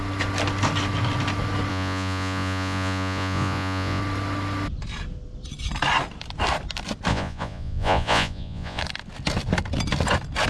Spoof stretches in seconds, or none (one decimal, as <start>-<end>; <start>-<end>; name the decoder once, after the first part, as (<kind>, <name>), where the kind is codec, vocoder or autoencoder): 1.7-4.0 (vocoder, Vocos); 7.1-8.8